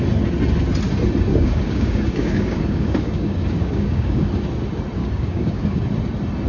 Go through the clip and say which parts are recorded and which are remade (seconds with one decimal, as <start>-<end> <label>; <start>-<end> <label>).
0.0-1.3 recorded; 1.3-4.3 remade; 4.3-5.0 recorded; 5.0-5.8 remade; 5.8-6.5 recorded